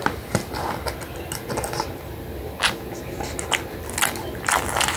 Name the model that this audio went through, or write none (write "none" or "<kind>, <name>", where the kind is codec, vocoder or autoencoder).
none